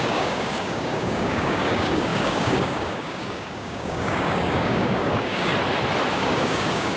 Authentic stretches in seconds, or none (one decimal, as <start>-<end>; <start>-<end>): 5.5-6.1